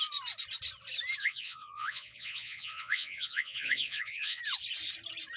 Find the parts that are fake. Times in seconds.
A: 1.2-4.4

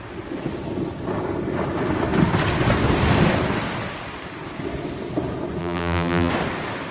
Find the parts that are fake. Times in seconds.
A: 5.6-6.3

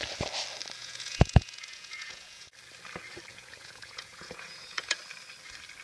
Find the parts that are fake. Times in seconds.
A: 0.8-2.5; 3.3-5.0

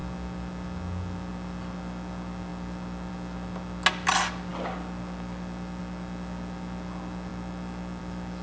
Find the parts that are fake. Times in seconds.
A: none

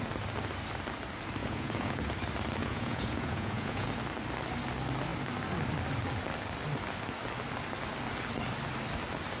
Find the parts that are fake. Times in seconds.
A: 1.4-2.1; 2.6-3.9

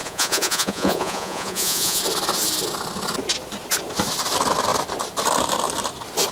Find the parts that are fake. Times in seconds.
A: 0.0-2.0